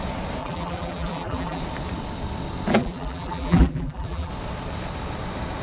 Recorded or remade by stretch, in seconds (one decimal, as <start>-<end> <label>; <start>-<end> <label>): 0.0-0.4 recorded; 0.4-1.6 remade; 1.6-2.7 recorded; 2.7-4.3 remade; 4.3-5.6 recorded